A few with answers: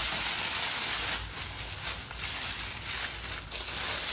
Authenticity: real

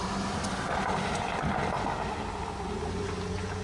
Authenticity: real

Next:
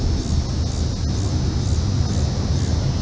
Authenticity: real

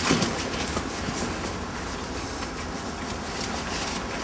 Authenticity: real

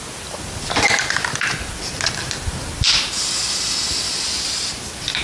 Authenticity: real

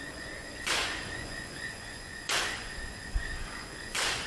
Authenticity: fake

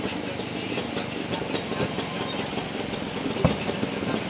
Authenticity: real